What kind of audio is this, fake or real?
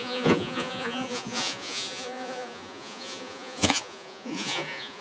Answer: fake